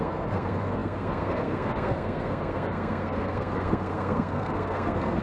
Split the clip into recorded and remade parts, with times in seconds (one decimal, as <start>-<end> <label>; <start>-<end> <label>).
0.0-5.2 remade